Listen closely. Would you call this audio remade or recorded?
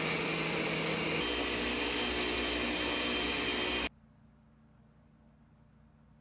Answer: recorded